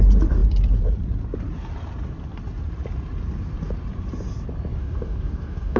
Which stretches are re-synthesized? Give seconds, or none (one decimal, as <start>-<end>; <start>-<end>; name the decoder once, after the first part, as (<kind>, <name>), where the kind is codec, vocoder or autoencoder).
4.8-5.8 (codec, DAC)